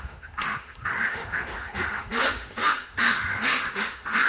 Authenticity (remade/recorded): remade